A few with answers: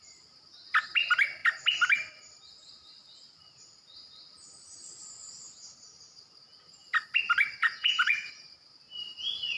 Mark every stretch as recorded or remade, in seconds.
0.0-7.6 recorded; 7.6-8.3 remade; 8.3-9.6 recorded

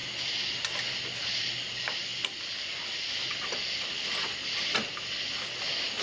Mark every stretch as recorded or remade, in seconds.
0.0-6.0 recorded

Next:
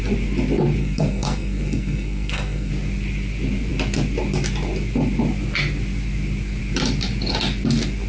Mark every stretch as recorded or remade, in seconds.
0.0-0.8 recorded; 0.8-2.7 remade; 2.7-8.1 recorded